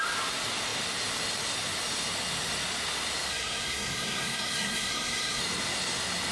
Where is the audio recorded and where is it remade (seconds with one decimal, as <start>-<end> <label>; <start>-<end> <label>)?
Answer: 0.0-3.3 recorded; 3.3-5.4 remade; 5.4-6.3 recorded